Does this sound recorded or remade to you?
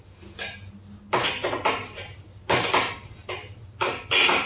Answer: recorded